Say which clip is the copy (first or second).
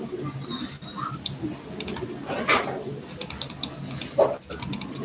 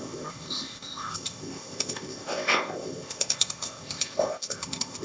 second